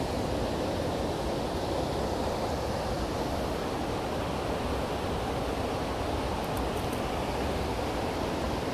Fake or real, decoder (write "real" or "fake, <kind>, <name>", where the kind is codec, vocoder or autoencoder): real